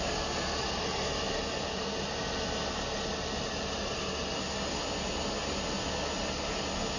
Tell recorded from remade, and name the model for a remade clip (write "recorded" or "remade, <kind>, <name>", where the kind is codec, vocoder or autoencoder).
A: recorded